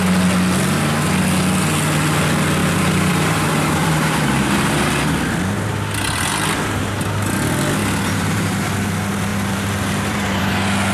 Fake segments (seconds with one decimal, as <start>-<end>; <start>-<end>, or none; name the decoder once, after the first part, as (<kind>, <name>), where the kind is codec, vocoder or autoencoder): 2.6-4.9 (vocoder, BigVGAN v2); 7.8-8.7; 9.3-10.5